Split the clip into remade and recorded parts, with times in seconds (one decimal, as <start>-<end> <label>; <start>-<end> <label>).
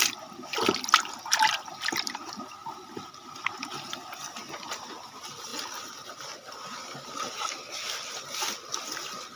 0.0-9.4 recorded